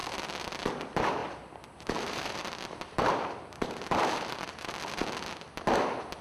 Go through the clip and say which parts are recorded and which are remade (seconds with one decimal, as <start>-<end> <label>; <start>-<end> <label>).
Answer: 0.0-1.2 recorded; 1.2-4.7 remade; 4.7-6.2 recorded